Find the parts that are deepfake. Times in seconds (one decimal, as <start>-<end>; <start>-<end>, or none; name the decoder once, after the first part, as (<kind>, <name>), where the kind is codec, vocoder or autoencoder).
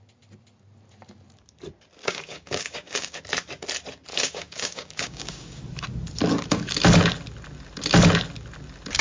2.0-3.2 (codec, DAC); 4.1-5.6